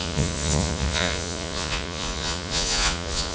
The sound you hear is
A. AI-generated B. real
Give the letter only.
A